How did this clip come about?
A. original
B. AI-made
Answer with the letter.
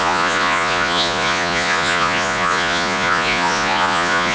B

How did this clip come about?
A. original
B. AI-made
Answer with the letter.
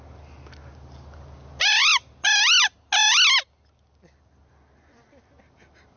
A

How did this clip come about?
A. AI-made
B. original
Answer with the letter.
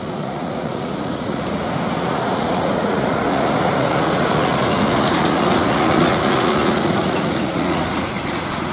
A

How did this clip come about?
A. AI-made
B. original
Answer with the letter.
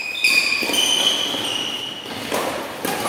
B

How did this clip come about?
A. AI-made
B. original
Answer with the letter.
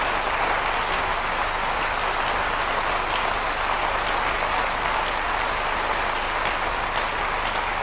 B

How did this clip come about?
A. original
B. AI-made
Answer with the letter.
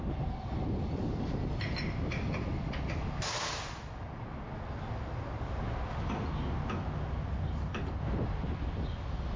A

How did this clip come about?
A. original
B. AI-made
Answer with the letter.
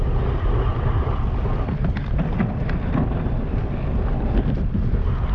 A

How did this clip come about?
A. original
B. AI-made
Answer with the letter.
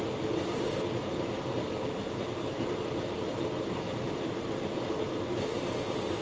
A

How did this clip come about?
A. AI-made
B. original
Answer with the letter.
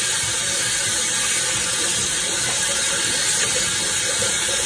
B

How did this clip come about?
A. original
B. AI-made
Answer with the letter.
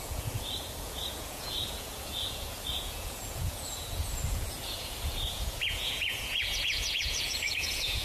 B